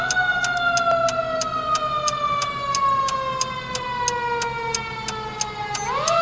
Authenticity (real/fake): real